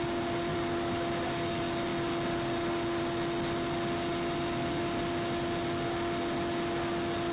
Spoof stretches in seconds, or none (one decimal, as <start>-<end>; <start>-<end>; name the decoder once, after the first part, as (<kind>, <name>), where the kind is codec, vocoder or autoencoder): 0.5-1.5 (vocoder, BigVGAN v2)